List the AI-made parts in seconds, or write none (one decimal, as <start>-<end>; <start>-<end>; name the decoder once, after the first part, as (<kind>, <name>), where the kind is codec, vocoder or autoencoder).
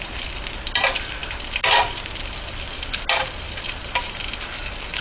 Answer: none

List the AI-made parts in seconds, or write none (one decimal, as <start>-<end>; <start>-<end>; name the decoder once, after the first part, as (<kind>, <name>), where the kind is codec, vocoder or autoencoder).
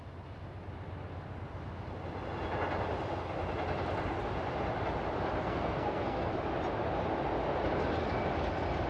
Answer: 5.4-6.3 (codec, SNAC)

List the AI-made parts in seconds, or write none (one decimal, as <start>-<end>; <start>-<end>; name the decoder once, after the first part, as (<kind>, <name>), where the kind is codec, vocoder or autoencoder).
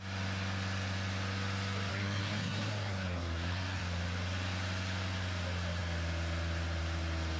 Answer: 1.9-3.8 (codec, SNAC)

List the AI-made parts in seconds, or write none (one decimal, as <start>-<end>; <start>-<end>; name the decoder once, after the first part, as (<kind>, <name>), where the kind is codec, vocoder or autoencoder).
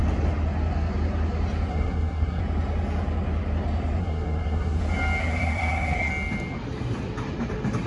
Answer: 1.7-2.4 (codec, SNAC); 4.0-4.8; 5.2-6.1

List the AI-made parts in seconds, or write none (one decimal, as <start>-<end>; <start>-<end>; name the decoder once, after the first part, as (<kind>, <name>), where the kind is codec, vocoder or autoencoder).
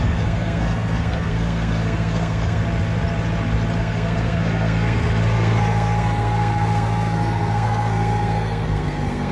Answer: 0.0-2.6 (codec, SNAC); 3.8-9.3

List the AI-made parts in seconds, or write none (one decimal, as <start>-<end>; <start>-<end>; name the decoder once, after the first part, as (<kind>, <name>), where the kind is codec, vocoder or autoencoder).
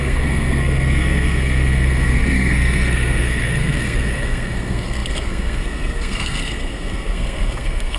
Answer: 0.0-8.0 (codec, SNAC)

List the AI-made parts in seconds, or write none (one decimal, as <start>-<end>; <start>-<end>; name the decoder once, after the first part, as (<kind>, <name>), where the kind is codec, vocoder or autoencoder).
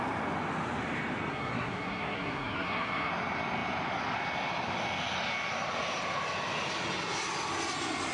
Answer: 1.3-3.1 (codec, SNAC)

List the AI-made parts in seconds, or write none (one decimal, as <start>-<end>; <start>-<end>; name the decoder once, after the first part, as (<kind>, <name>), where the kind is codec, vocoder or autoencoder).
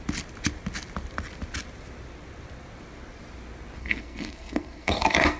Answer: 3.8-5.4 (codec, SNAC)